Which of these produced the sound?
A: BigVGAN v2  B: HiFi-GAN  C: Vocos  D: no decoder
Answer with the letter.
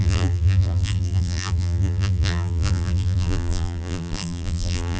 A